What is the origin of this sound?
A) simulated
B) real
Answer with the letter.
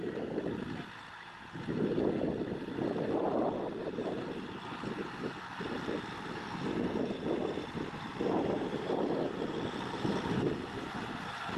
B